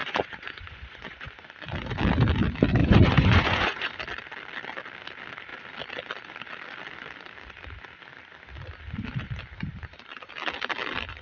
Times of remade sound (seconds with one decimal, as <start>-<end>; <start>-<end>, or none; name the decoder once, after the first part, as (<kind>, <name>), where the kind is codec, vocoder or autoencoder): 0.0-1.3 (vocoder, Vocos); 2.8-3.9